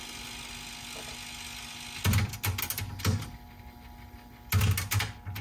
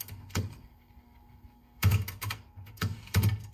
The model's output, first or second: second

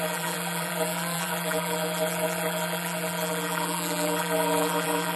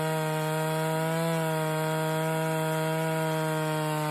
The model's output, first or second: first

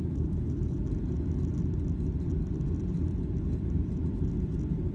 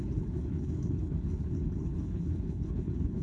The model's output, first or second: second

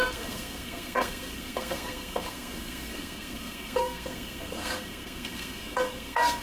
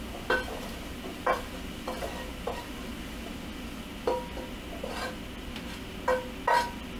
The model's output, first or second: first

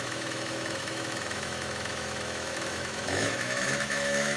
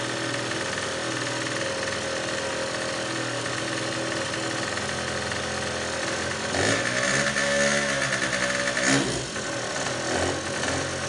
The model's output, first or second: first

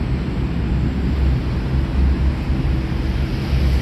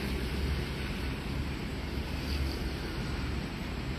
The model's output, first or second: second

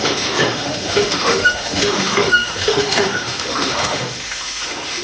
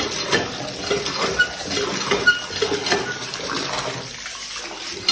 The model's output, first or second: first